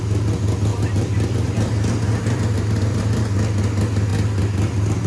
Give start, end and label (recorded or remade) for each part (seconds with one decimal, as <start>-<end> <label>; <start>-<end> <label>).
0.0-0.7 recorded; 0.7-3.2 remade; 3.2-5.1 recorded